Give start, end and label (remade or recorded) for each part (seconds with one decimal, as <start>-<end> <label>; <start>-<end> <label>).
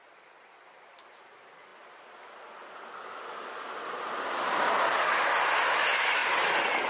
0.0-6.2 recorded; 6.2-6.9 remade